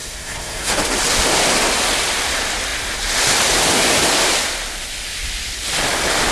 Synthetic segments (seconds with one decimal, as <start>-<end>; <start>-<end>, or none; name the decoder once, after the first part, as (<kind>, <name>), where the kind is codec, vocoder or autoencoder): 0.0-0.7 (codec, SNAC)